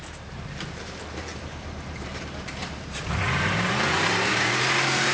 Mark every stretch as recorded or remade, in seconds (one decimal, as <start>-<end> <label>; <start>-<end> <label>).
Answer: 0.0-5.1 remade